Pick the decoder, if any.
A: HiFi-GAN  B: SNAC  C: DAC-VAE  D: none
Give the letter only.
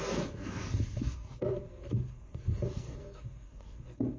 B